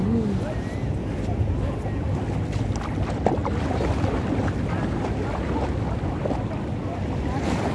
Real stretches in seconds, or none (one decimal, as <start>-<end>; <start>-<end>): 0.0-7.7